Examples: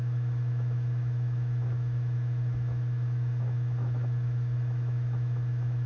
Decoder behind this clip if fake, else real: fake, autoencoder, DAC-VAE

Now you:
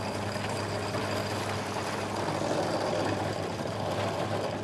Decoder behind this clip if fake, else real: real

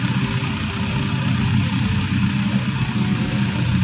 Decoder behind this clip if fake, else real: real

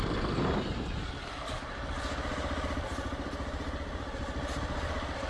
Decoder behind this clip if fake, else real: real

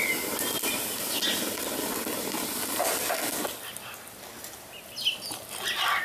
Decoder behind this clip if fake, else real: real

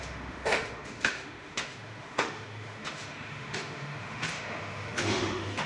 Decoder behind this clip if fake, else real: fake, autoencoder, DAC-VAE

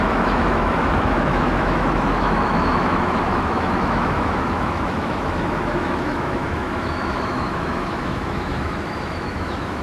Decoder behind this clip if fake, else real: fake, autoencoder, DAC-VAE